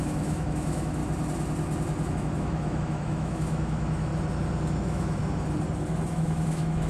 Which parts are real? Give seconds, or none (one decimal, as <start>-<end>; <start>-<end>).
1.0-2.1; 4.1-4.8; 5.2-6.1